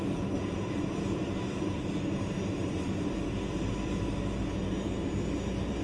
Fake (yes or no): no